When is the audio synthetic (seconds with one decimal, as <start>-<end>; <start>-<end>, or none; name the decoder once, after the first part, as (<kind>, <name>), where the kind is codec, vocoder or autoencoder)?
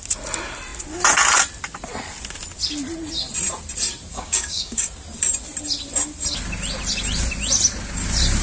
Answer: 4.1-4.9 (codec, DAC)